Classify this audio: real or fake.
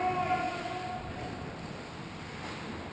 real